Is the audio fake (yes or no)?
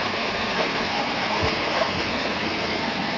yes